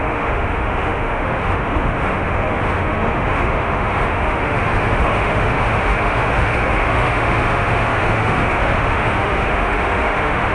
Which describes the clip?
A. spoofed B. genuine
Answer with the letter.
A